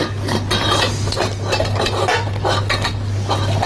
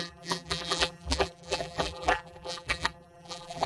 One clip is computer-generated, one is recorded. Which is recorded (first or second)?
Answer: first